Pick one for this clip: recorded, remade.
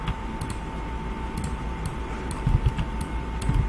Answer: recorded